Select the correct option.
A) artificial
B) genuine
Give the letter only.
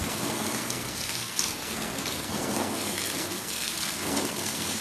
A